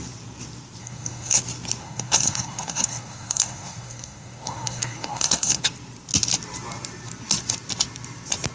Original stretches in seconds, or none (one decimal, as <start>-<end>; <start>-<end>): 0.0-0.8; 1.4-1.8; 5.6-8.5